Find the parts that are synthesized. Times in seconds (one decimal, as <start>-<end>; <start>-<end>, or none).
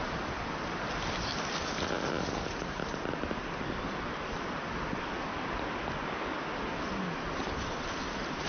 none